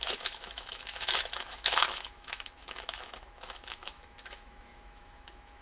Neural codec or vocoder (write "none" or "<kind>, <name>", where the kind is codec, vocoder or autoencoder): autoencoder, DAC-VAE